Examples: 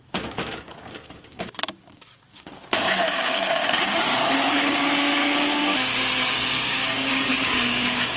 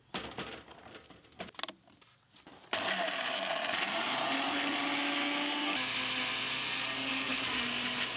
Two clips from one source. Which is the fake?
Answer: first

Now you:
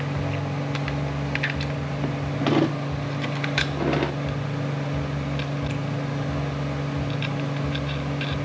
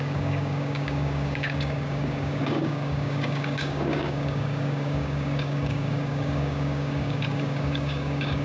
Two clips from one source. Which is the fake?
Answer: second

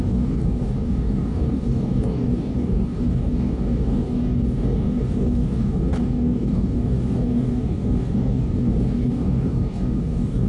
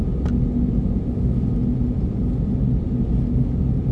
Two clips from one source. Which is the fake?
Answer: first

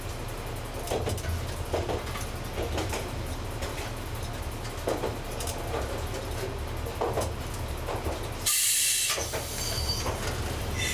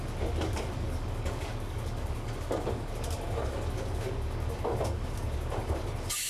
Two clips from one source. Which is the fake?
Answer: second